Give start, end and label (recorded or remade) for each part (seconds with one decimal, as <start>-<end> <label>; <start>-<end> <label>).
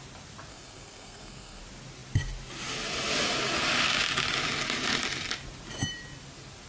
0.0-0.5 recorded; 0.5-1.6 remade; 1.6-6.7 recorded